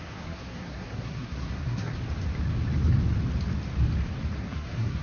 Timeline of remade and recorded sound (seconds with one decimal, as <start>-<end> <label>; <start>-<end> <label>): 0.0-1.9 remade; 1.9-4.4 recorded; 4.4-5.0 remade